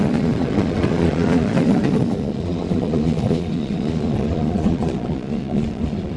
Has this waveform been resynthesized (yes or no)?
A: yes